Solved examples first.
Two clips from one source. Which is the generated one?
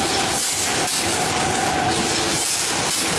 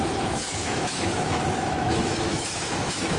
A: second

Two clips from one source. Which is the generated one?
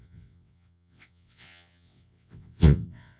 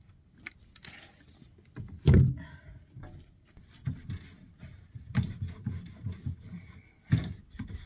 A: first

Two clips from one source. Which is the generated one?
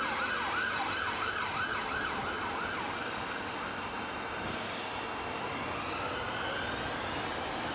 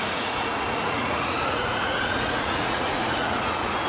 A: second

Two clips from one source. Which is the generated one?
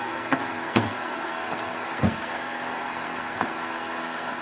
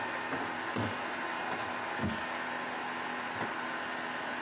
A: first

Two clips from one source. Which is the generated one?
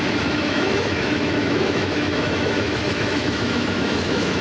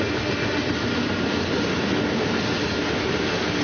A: first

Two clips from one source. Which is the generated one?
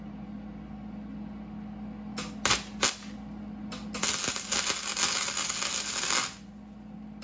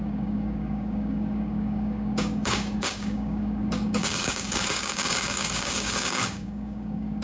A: second